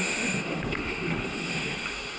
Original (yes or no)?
no